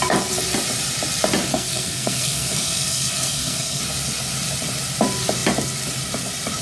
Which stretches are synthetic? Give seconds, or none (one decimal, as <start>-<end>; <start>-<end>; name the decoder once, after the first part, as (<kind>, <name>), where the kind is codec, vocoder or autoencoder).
1.5-3.8 (codec, SNAC)